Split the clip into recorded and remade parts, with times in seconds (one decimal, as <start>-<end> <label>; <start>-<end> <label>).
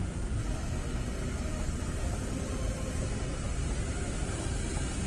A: 0.0-5.1 recorded